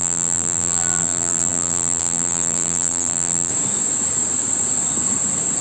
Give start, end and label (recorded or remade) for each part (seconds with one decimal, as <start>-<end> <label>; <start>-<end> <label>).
0.0-3.5 remade; 3.5-5.6 recorded